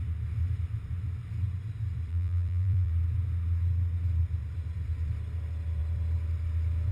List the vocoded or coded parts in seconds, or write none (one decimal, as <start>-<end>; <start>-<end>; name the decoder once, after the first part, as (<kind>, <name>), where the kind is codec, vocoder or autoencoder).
2.1-2.9 (vocoder, BigVGAN v2)